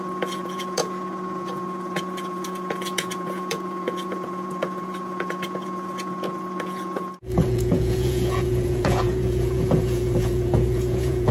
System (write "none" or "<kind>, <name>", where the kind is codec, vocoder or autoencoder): vocoder, Vocos